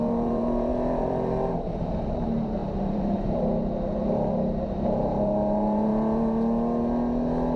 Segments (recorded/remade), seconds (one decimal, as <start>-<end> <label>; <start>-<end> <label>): 0.0-5.9 remade; 5.9-7.6 recorded

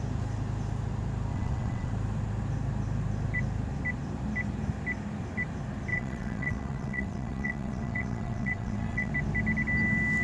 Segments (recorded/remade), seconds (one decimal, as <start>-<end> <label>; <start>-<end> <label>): 0.0-1.3 recorded; 1.3-1.9 remade; 1.9-5.9 recorded; 5.9-9.1 remade; 9.1-10.2 recorded

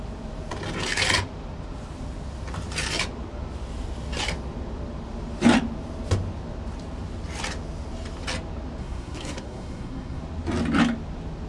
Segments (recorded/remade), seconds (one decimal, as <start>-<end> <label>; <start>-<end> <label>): 0.0-8.8 recorded; 8.8-10.2 remade; 10.2-11.5 recorded

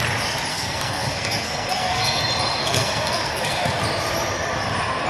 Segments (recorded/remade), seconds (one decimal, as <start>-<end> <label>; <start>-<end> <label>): 0.0-0.5 recorded; 0.5-2.2 remade; 2.2-2.6 recorded; 2.6-3.8 remade; 3.8-5.1 recorded

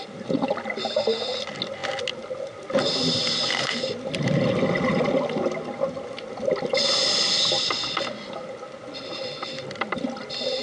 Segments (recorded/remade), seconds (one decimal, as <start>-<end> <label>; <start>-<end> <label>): 0.0-10.6 recorded

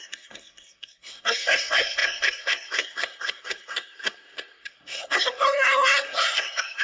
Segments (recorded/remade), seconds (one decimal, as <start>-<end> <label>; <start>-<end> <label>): 0.0-6.8 remade

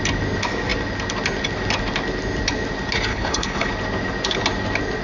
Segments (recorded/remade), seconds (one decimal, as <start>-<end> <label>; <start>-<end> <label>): 0.0-3.1 recorded; 3.1-3.7 remade; 3.7-5.0 recorded

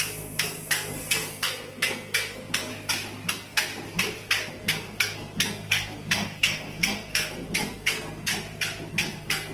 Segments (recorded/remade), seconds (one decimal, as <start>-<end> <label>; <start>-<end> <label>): 0.0-2.7 remade; 2.7-3.3 recorded; 3.3-3.7 remade; 3.7-4.5 recorded; 4.5-8.3 remade; 8.3-8.9 recorded; 8.9-9.5 remade